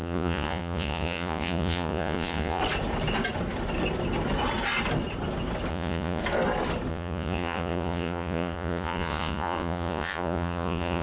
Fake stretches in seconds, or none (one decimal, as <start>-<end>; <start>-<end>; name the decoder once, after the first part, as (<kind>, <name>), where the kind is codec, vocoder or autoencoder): 0.0-2.6 (vocoder, Vocos); 5.7-6.2; 6.9-11.0